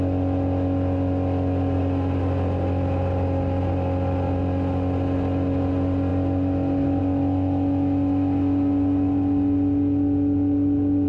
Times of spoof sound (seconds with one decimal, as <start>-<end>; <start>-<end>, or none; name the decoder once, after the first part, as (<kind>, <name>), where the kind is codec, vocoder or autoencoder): none